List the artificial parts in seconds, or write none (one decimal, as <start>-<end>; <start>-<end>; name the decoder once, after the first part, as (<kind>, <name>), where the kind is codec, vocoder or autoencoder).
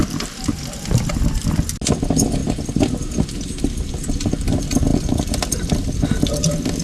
0.0-1.1 (vocoder, BigVGAN v2); 4.9-6.1